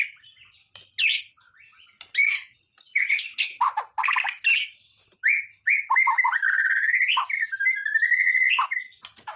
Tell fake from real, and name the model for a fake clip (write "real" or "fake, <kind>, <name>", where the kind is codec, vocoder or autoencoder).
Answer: real